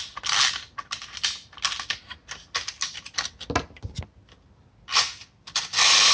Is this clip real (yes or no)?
yes